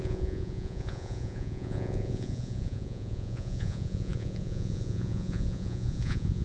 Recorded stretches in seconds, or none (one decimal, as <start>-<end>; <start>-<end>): none